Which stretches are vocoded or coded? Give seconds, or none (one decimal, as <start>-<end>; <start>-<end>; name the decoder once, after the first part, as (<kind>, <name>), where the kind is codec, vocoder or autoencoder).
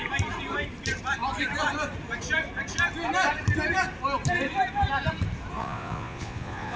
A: 5.6-6.8 (vocoder, Vocos)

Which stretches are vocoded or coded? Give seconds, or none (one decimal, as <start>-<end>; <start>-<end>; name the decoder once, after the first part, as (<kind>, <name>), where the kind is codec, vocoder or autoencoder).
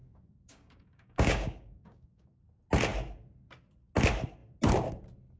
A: 0.0-2.4 (codec, DAC)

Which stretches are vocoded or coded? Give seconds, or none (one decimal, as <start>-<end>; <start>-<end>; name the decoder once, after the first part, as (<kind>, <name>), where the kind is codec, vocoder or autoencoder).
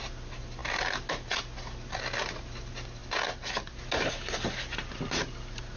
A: none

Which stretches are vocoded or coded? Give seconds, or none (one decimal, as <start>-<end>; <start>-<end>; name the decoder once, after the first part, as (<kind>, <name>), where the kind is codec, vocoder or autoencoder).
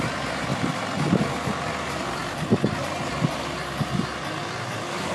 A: 0.5-1.0 (vocoder, BigVGAN v2)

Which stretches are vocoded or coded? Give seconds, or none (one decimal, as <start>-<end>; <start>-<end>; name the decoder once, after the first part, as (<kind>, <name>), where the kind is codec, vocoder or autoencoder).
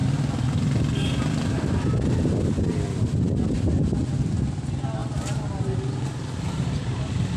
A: none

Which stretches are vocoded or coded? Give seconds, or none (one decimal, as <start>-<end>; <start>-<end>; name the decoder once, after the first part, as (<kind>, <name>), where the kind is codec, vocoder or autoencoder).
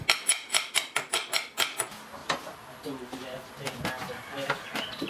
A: 0.5-1.1 (vocoder, BigVGAN v2)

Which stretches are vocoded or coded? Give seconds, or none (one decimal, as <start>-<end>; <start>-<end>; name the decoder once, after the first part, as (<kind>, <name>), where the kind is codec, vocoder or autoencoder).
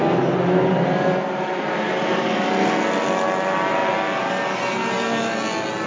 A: none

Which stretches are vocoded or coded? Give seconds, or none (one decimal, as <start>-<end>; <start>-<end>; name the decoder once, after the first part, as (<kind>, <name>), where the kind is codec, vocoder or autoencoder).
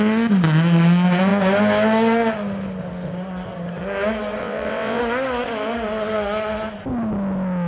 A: 4.4-5.0 (vocoder, WaveNeXt)